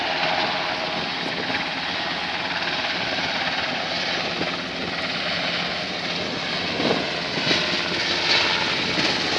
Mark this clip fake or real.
real